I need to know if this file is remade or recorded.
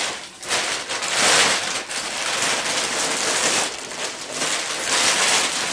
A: recorded